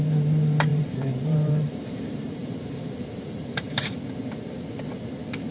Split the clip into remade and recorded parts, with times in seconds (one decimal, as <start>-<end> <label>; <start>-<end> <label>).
0.0-0.7 recorded; 0.7-4.0 remade; 4.0-5.5 recorded